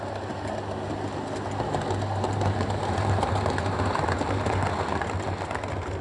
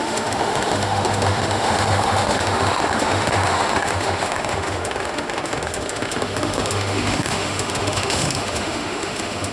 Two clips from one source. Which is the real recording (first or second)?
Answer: first